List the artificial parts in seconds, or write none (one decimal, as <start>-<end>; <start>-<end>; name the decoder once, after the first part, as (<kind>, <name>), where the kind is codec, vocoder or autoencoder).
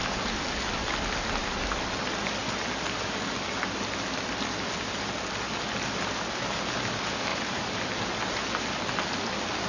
7.3-7.8 (vocoder, BigVGAN v2)